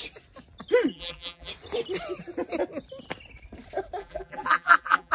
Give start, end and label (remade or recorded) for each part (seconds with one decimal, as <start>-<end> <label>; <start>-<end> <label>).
0.0-0.9 recorded; 0.9-1.5 remade; 1.5-4.0 recorded; 4.0-5.1 remade